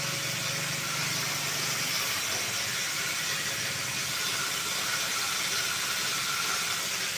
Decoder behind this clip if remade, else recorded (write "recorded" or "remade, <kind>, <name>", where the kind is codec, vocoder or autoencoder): recorded